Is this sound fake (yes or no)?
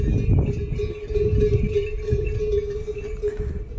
no